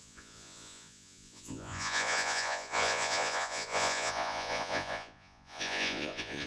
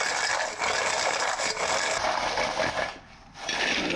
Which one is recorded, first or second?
second